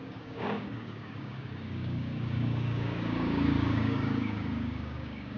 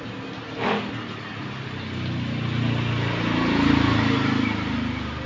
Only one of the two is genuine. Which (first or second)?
second